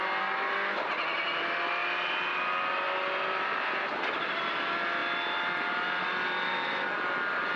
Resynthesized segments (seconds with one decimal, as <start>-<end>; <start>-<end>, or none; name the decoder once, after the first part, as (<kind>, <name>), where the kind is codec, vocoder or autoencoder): none

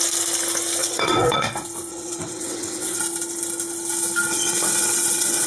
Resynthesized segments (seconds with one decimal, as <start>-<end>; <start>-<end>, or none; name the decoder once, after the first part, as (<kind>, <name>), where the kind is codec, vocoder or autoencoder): 0.8-1.5 (vocoder, WaveNeXt); 1.9-3.0; 4.3-5.5

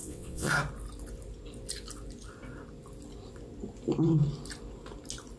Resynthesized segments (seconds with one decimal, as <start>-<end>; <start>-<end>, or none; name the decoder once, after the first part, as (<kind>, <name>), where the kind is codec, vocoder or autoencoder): 0.0-0.5 (vocoder, WaveNeXt)